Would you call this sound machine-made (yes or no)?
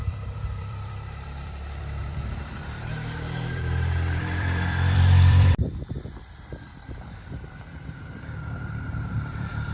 yes